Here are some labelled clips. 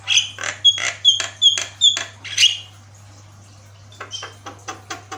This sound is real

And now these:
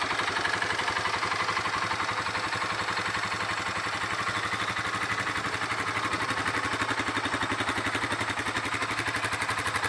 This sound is real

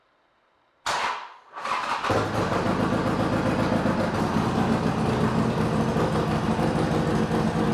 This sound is real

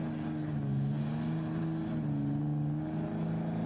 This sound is real